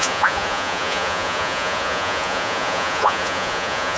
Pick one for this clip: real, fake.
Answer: fake